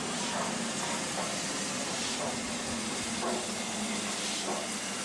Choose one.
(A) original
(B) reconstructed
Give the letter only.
A